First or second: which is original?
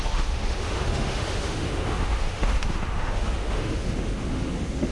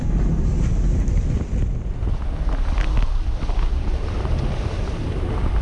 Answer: second